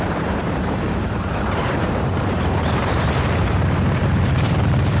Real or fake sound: fake